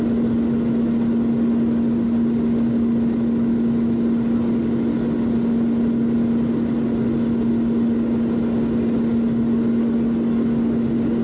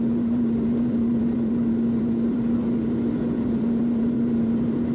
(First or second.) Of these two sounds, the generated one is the second